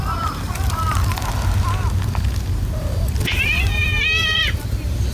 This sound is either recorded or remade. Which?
recorded